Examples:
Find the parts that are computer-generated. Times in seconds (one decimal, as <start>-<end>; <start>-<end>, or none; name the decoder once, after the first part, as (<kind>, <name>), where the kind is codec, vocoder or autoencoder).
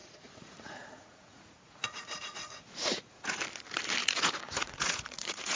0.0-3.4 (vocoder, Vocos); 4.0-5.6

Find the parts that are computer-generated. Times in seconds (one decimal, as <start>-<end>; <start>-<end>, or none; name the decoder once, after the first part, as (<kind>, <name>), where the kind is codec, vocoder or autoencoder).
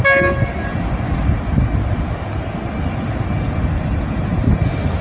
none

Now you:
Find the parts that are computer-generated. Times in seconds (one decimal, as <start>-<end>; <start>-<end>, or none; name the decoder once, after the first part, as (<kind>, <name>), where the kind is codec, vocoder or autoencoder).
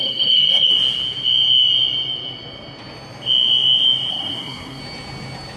0.0-0.7 (codec, SNAC); 4.1-4.8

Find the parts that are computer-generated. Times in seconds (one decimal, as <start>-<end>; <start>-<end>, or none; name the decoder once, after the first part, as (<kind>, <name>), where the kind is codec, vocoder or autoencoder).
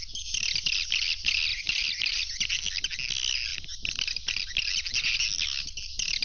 1.5-2.2 (vocoder, BigVGAN v2)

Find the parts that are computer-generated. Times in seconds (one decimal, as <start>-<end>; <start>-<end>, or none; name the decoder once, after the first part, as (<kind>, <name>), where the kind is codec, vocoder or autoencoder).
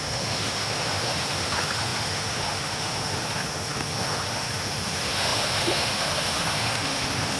0.0-7.4 (autoencoder, DAC-VAE)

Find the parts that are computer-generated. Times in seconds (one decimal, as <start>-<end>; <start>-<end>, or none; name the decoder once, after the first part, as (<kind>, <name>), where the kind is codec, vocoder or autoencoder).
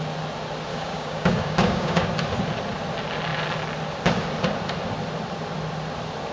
0.7-2.1 (codec, DAC)